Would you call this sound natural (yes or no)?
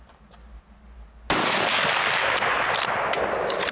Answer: yes